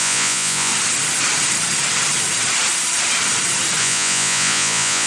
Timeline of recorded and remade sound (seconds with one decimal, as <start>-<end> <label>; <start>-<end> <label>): 0.0-0.7 remade; 0.7-3.8 recorded; 3.8-5.1 remade